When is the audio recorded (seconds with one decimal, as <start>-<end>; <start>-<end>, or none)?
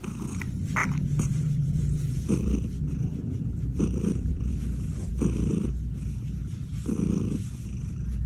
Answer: 0.0-0.8; 4.5-8.3